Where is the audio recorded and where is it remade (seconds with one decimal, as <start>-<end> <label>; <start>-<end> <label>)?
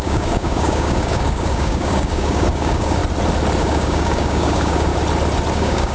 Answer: 0.0-3.0 remade; 3.0-3.6 recorded; 3.6-4.9 remade; 4.9-5.5 recorded; 5.5-5.9 remade